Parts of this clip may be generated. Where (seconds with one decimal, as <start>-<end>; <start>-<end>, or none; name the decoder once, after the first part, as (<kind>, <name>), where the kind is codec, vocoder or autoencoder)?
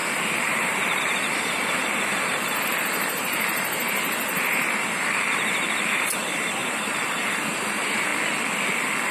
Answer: 0.0-8.1 (vocoder, BigVGAN v2)